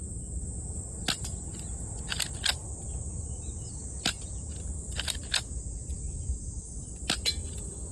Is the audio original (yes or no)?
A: yes